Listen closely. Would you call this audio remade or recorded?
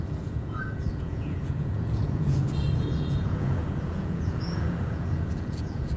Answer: remade